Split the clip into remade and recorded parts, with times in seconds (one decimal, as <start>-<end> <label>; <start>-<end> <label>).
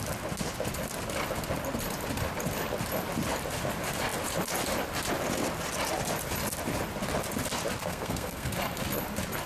0.0-7.8 recorded; 7.8-8.5 remade; 8.5-9.5 recorded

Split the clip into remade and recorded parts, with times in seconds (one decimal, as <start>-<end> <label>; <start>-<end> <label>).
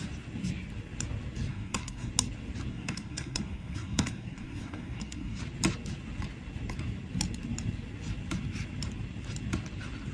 0.0-1.5 recorded; 1.5-2.1 remade; 2.1-2.7 recorded; 2.7-5.4 remade; 5.4-10.1 recorded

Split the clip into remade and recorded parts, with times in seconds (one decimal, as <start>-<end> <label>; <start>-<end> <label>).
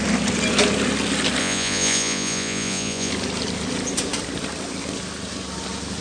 0.0-1.4 recorded; 1.4-3.1 remade; 3.1-6.0 recorded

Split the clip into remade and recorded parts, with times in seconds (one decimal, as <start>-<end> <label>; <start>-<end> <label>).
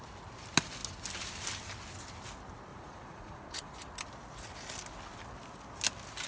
0.0-2.7 recorded; 2.7-3.7 remade; 3.7-6.3 recorded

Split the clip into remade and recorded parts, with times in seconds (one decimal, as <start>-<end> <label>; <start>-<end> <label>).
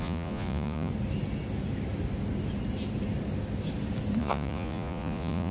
0.0-0.9 remade; 0.9-4.2 recorded; 4.2-5.5 remade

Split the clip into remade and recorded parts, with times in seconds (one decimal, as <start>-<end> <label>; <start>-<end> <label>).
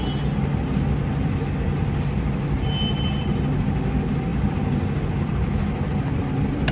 0.0-6.7 recorded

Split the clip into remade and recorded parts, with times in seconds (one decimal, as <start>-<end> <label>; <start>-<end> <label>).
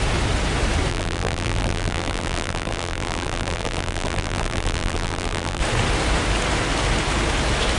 0.0-0.9 recorded; 0.9-5.6 remade; 5.6-7.8 recorded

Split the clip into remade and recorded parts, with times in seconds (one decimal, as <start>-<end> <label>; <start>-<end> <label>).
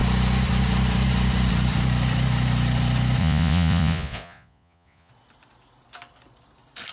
0.0-3.2 recorded; 3.2-5.1 remade; 5.1-6.9 recorded